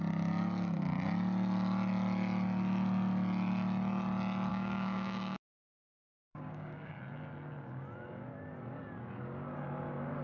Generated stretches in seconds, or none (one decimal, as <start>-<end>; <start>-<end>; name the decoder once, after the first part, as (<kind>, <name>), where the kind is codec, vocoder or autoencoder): 4.5-6.9 (codec, DAC)